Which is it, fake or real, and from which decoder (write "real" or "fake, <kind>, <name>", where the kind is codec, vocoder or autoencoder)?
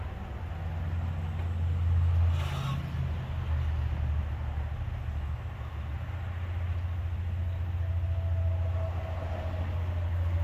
real